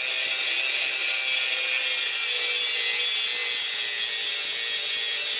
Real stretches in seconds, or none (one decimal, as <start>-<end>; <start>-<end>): 0.0-5.4